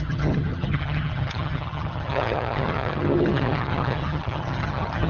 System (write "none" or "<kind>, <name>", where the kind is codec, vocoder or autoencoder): vocoder, HiFi-GAN